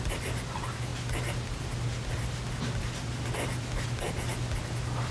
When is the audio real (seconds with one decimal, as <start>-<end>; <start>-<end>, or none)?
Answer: 0.0-5.1